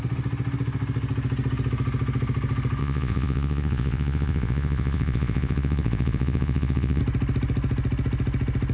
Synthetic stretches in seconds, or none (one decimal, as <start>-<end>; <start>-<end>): 2.8-7.0